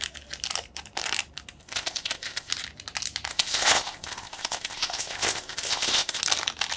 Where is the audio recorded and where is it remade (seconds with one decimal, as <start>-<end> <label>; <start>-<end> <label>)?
0.0-1.6 recorded; 1.6-2.5 remade; 2.5-3.3 recorded; 3.3-6.2 remade; 6.2-6.8 recorded